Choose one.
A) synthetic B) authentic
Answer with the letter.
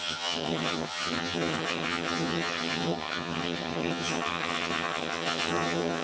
A